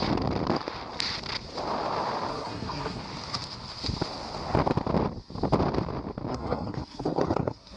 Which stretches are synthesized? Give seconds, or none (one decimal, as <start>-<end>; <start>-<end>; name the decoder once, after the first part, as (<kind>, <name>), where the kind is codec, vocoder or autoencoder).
2.3-3.0 (codec, SNAC); 6.3-7.8